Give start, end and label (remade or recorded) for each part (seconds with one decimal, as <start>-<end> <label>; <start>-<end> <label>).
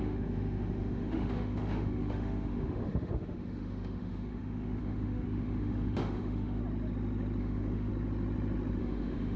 0.0-6.6 remade; 6.6-7.4 recorded; 7.4-7.9 remade; 7.9-8.8 recorded; 8.8-9.4 remade